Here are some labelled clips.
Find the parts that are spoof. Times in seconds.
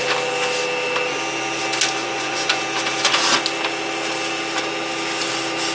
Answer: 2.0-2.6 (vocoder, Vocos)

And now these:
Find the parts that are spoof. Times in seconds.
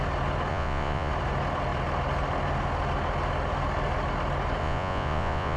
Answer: 0.5-1.1 (vocoder, Vocos); 4.6-5.6